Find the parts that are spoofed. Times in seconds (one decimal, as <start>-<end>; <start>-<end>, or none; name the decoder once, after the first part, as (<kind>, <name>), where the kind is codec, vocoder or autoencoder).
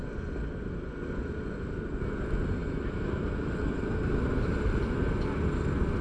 3.6-4.8 (vocoder, BigVGAN v2)